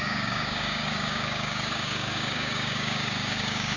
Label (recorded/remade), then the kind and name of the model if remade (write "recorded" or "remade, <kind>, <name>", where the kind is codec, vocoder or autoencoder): remade, codec, DAC